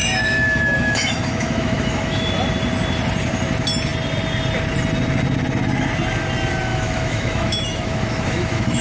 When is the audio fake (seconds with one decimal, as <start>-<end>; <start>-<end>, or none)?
0.0-2.3; 6.7-8.8